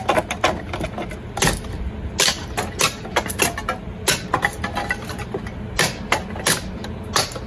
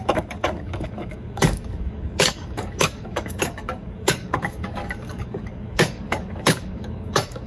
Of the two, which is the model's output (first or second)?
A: second